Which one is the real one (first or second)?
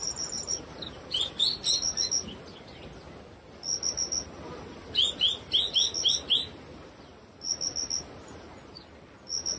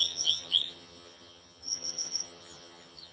first